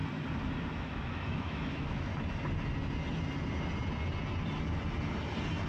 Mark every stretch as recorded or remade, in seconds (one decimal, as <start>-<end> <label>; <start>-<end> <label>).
0.0-0.8 recorded; 0.8-2.1 remade; 2.1-5.7 recorded